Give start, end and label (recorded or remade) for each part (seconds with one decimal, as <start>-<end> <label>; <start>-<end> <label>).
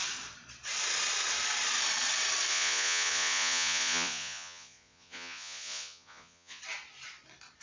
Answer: 0.0-2.5 recorded; 2.5-6.6 remade; 6.6-7.6 recorded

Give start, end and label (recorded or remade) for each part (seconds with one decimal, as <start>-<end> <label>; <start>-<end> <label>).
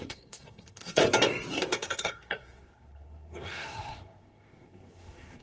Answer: 0.0-1.0 remade; 1.0-1.5 recorded; 1.5-5.4 remade